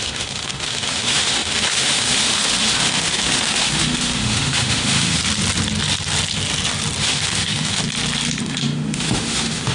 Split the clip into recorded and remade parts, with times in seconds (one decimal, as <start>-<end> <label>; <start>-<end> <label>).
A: 0.0-5.2 remade; 5.2-7.0 recorded; 7.0-7.8 remade; 7.8-8.4 recorded; 8.4-9.7 remade